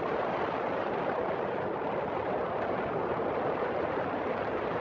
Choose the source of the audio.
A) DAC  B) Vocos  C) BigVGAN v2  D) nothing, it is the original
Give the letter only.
C